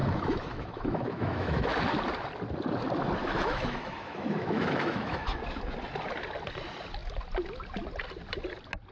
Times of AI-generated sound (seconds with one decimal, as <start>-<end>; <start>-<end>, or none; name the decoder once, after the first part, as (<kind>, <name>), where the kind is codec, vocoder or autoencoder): 0.0-1.8 (autoencoder, DAC-VAE); 3.2-5.4